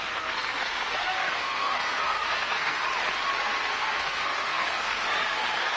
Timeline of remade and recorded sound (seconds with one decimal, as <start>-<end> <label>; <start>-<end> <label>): 0.0-2.9 remade; 2.9-3.4 recorded; 3.4-5.8 remade